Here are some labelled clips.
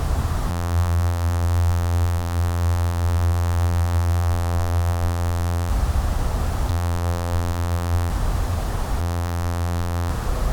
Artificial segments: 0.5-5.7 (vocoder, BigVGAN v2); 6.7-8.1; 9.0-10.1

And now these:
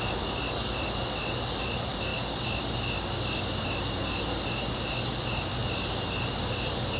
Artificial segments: 2.1-2.6 (vocoder, BigVGAN v2)

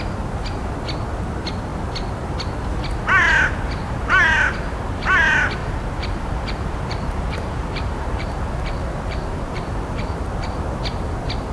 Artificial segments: 5.6-10.6 (vocoder, BigVGAN v2)

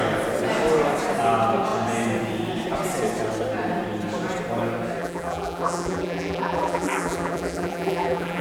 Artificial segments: 5.0-8.4 (vocoder, BigVGAN v2)